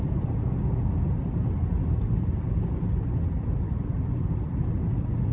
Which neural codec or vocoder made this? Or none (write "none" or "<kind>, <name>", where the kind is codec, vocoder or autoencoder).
none